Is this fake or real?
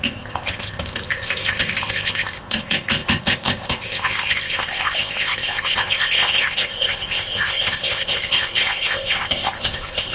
fake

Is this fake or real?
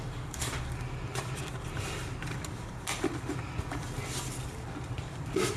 fake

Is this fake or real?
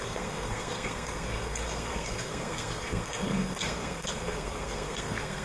fake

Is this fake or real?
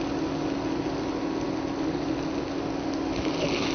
real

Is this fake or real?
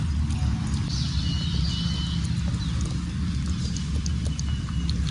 real